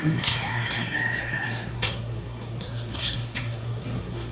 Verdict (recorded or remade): remade